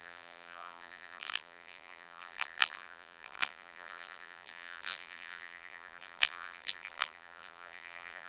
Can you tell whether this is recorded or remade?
remade